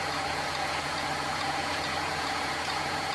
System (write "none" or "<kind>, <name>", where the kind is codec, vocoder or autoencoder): vocoder, Vocos